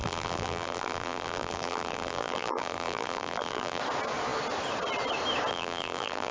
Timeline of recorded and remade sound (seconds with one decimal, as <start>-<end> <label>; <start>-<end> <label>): 0.0-3.8 remade; 3.8-5.5 recorded; 5.5-6.3 remade